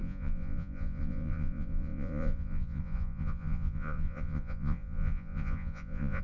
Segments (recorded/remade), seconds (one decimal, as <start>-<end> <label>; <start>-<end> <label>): 0.0-6.2 remade